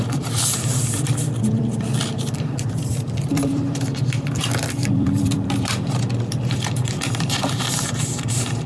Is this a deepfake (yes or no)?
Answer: yes